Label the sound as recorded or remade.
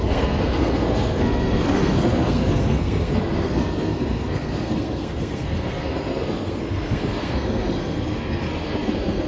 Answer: remade